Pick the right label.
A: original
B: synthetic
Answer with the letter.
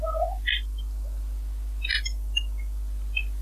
A